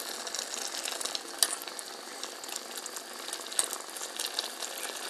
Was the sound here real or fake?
real